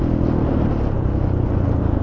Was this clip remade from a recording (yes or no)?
no